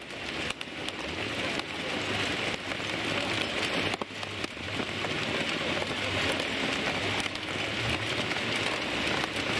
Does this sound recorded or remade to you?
recorded